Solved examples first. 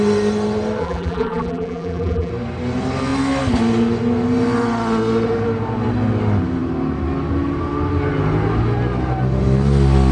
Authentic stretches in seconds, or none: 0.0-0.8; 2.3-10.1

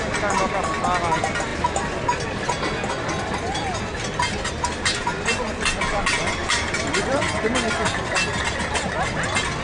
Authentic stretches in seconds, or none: 0.0-6.4; 7.1-9.6

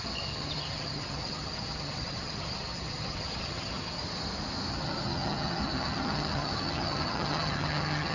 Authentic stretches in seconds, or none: 4.0-4.7